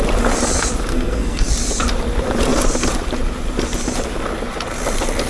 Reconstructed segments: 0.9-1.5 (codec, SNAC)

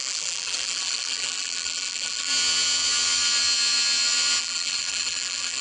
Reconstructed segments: 0.0-2.3 (vocoder, BigVGAN v2); 4.4-5.6

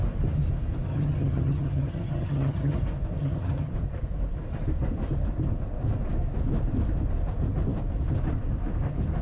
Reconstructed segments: 0.9-2.8 (vocoder, HiFi-GAN); 3.2-3.7

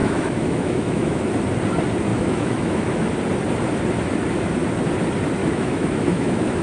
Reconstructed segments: 0.0-1.3 (autoencoder, DAC-VAE); 2.1-3.1; 5.4-6.6

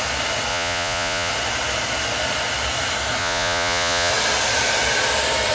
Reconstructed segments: 0.5-1.3 (vocoder, Vocos); 3.2-4.1

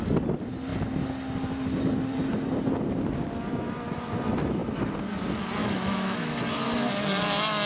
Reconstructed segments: 5.6-6.4 (autoencoder, DAC-VAE)